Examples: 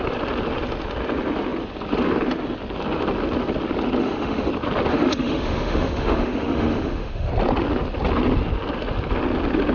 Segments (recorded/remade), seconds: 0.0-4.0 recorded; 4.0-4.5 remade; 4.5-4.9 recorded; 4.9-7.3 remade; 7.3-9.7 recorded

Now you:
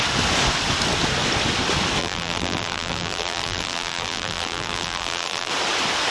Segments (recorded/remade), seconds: 0.0-2.0 recorded; 2.0-5.5 remade; 5.5-6.1 recorded

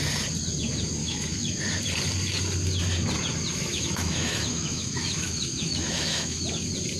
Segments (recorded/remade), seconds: 0.0-1.0 recorded; 1.0-1.6 remade; 1.6-3.7 recorded; 3.7-6.4 remade; 6.4-7.0 recorded

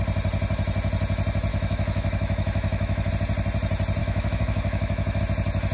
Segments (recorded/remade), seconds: 0.0-1.5 recorded; 1.5-3.1 remade; 3.1-4.0 recorded; 4.0-5.2 remade; 5.2-5.7 recorded

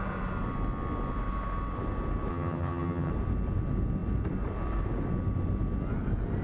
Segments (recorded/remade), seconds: 0.0-2.3 recorded; 2.3-3.1 remade; 3.1-6.4 recorded